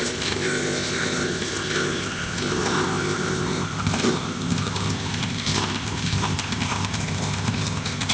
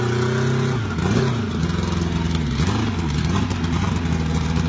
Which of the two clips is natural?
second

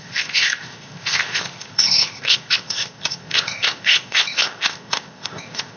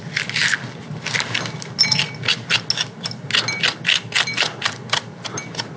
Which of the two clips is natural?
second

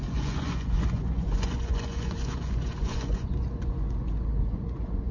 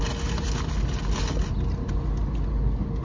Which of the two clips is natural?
second